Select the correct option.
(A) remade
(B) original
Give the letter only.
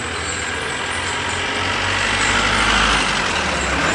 B